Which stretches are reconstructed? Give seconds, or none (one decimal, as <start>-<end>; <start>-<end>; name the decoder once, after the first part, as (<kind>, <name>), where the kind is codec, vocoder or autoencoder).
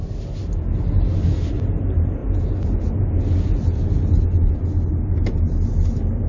none